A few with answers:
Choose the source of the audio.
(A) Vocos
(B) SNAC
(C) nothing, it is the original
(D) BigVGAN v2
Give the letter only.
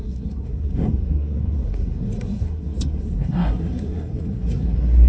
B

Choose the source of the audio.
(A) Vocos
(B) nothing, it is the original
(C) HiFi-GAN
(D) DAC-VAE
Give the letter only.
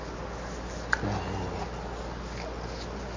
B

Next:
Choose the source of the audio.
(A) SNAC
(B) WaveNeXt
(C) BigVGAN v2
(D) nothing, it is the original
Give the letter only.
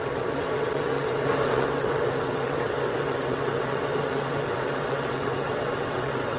B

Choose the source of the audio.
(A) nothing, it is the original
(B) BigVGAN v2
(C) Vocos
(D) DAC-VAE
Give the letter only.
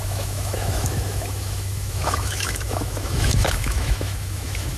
D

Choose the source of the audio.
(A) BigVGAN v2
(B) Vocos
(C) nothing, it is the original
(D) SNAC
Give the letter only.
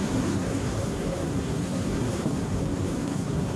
D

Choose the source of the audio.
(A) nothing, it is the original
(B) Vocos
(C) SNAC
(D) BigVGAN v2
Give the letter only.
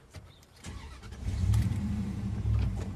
D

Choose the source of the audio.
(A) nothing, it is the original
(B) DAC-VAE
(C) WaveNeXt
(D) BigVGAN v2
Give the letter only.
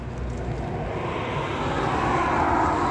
A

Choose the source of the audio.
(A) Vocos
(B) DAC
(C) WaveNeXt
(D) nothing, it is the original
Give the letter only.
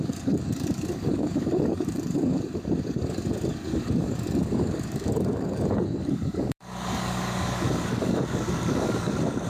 B